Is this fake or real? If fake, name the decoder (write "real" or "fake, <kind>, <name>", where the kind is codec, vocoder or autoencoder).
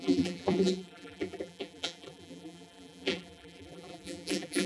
fake, vocoder, BigVGAN v2